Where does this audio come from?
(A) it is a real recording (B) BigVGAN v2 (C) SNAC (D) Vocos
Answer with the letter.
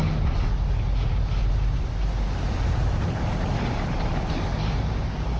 A